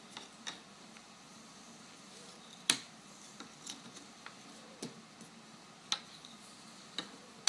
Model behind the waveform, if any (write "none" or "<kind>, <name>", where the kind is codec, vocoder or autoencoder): none